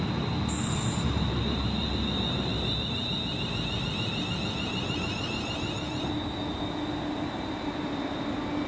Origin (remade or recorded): recorded